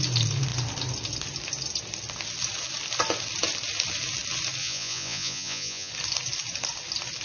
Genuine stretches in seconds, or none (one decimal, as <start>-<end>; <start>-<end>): 0.0-4.6; 5.9-7.2

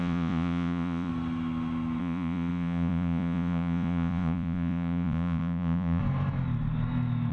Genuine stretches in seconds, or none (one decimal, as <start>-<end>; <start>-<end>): 1.1-2.0; 6.0-7.3

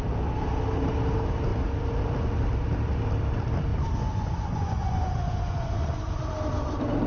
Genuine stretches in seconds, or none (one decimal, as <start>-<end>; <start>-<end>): 0.0-3.7; 6.2-7.1

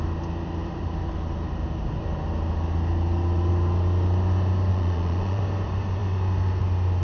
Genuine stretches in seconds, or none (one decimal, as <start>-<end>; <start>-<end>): 0.0-4.7; 5.4-7.0

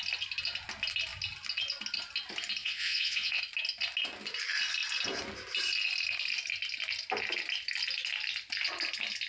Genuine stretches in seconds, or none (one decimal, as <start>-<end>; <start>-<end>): 0.0-2.6; 3.4-9.3

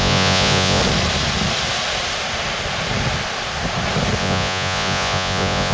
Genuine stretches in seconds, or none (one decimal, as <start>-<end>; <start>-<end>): 0.8-4.2